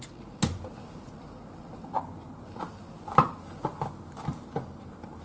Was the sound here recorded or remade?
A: recorded